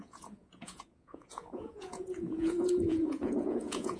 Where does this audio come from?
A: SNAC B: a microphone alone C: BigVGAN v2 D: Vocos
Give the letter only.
D